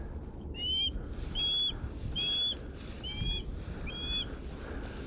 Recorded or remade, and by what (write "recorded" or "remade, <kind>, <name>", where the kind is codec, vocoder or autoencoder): recorded